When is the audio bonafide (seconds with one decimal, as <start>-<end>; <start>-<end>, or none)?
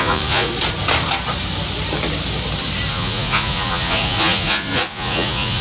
0.5-2.9